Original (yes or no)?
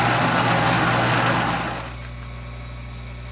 yes